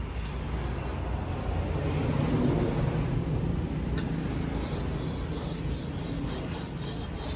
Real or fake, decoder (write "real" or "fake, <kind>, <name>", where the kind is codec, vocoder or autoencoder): real